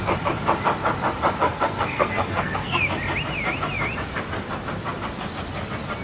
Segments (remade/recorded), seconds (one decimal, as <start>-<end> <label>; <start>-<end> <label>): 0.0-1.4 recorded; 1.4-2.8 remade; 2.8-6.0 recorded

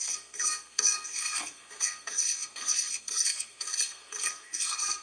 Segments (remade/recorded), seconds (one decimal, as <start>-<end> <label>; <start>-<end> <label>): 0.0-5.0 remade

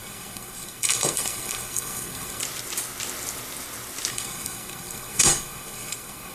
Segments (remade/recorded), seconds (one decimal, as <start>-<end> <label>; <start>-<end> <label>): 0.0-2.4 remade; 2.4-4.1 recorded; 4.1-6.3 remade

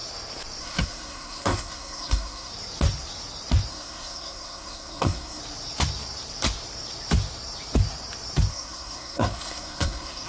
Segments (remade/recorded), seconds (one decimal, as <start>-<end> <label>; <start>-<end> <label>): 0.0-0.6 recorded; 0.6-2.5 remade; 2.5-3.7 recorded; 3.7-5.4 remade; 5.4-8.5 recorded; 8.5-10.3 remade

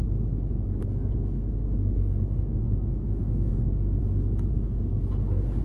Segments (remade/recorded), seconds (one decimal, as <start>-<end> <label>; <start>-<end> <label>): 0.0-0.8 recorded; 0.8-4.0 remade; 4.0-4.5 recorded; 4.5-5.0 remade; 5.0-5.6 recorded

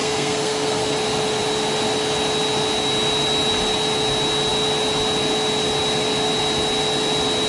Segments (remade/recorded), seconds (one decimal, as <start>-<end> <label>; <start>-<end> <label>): 0.0-0.8 remade; 0.8-7.5 recorded